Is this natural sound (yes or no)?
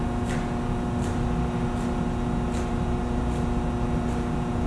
yes